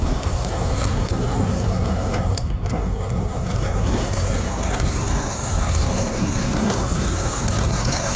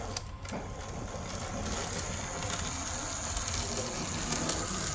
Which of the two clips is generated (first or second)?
first